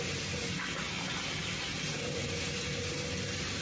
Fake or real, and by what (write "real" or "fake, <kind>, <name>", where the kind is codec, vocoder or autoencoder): real